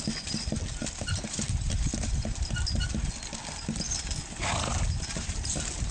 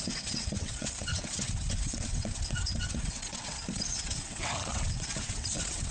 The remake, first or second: second